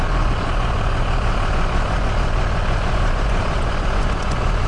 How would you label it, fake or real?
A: fake